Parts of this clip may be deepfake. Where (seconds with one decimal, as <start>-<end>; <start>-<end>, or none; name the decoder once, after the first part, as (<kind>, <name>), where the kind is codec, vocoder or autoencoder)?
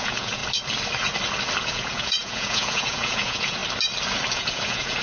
0.0-0.4 (vocoder, Vocos); 1.6-3.6; 4.3-5.0